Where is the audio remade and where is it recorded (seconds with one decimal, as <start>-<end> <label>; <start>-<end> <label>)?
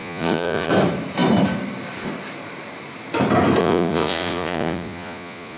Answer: 0.0-0.7 remade; 0.7-3.6 recorded; 3.6-5.6 remade